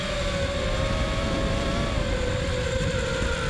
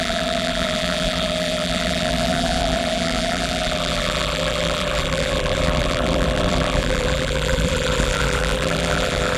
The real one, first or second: first